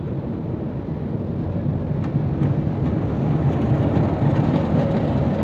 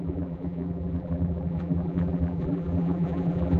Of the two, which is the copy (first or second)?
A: second